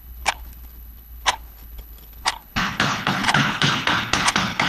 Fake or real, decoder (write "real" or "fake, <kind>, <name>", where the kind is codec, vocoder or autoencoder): fake, codec, HILCodec